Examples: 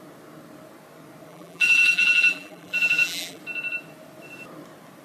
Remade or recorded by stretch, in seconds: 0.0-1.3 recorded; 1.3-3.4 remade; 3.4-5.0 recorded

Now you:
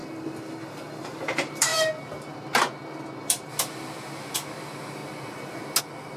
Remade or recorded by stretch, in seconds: 0.0-1.7 remade; 1.7-4.6 recorded; 4.6-5.0 remade; 5.0-5.8 recorded; 5.8-6.2 remade

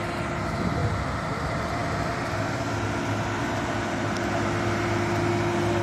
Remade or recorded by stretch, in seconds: 0.0-5.8 recorded